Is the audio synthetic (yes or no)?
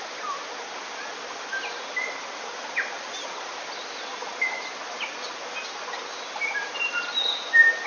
no